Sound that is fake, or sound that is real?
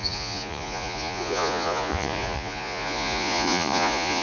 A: fake